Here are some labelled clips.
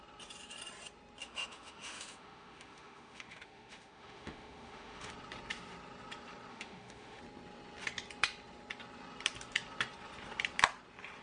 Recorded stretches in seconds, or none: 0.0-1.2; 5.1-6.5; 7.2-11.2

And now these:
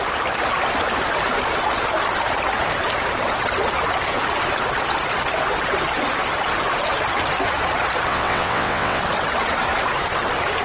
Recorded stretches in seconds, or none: 0.0-8.1; 9.0-10.6

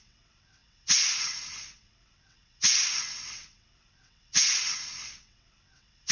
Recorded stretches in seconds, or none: none

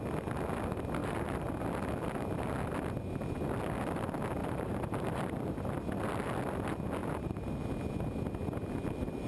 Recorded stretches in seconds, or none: 0.0-1.0; 1.5-4.4; 5.8-7.0; 7.6-9.3

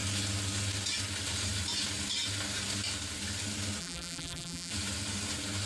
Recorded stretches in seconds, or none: 0.0-3.8; 4.7-5.7

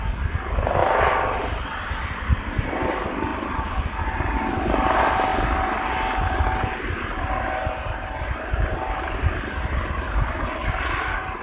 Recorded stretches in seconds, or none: 0.0-0.8; 1.6-3.3; 3.8-11.4

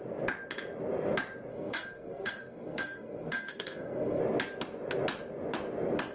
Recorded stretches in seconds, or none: 0.0-1.5; 4.2-6.1